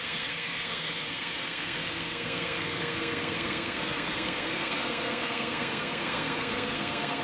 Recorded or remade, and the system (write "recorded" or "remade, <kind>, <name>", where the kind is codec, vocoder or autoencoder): remade, codec, SNAC